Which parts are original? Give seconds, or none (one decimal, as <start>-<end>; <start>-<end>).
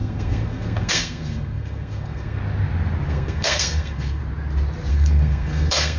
2.4-3.1; 4.2-4.9